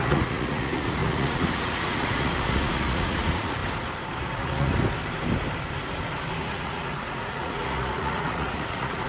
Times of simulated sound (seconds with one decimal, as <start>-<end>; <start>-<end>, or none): 0.0-3.6; 4.2-4.7; 6.4-9.1